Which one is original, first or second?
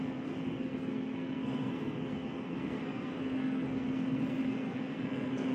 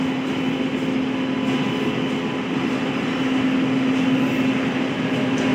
second